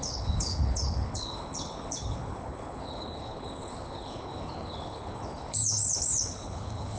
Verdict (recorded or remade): remade